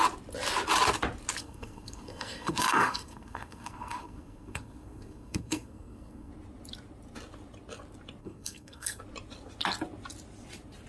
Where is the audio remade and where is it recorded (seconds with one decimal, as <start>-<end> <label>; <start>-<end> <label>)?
0.0-1.4 recorded; 1.4-6.3 remade; 6.3-8.2 recorded; 8.2-9.0 remade; 9.0-10.9 recorded